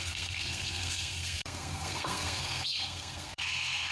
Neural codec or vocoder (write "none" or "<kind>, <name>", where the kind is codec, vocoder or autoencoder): codec, SNAC